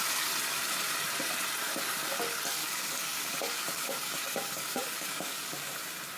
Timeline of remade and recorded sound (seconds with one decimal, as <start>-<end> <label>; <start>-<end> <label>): 0.0-1.6 recorded; 1.6-2.2 remade; 2.2-2.6 recorded; 2.6-5.7 remade; 5.7-6.2 recorded